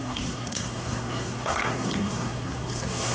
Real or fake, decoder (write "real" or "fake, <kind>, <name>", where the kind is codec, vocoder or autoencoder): fake, codec, SNAC